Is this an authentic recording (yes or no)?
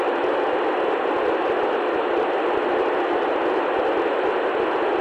yes